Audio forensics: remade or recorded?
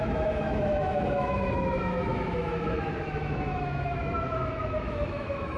remade